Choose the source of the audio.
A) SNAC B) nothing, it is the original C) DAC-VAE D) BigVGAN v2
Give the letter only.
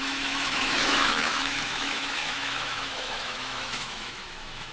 C